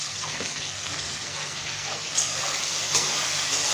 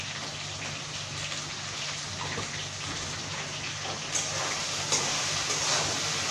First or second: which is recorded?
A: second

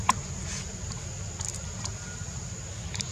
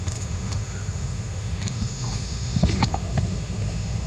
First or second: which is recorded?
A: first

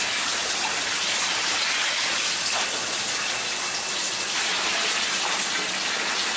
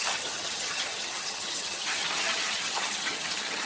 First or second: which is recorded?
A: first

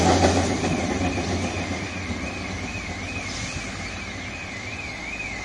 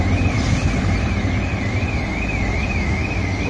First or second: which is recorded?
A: first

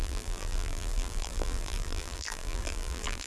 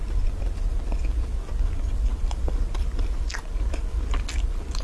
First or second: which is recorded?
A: second